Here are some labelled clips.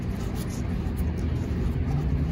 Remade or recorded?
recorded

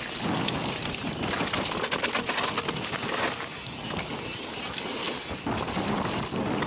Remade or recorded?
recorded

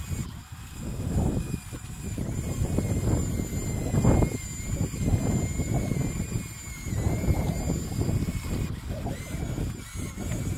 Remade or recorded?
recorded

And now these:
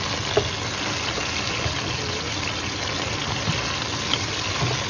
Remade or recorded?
recorded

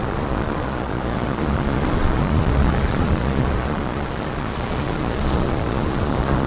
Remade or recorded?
remade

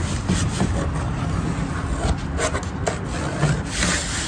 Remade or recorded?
recorded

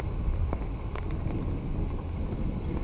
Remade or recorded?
recorded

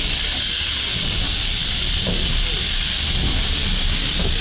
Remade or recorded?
recorded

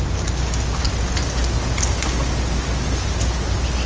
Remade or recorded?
recorded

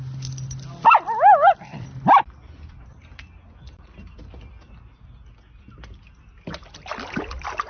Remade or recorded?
recorded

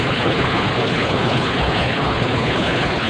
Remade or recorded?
remade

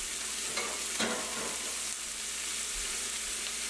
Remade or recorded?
recorded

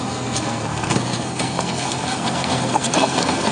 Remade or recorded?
remade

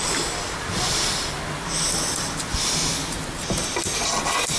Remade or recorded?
recorded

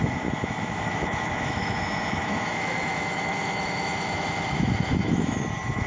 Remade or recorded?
remade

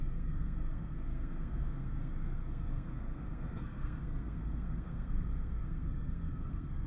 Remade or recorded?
remade